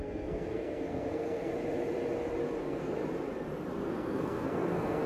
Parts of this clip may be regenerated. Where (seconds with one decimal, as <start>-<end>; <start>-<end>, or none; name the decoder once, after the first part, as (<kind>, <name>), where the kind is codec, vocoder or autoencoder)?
0.0-1.5 (codec, SNAC); 2.6-3.0; 3.9-5.1